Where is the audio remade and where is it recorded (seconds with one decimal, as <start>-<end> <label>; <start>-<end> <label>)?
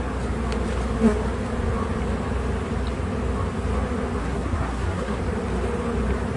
0.0-4.2 recorded; 4.2-5.2 remade; 5.2-6.4 recorded